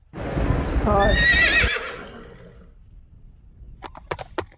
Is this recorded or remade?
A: recorded